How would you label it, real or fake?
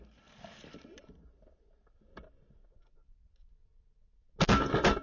real